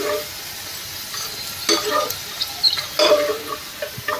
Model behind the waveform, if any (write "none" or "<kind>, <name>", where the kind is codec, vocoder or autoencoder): none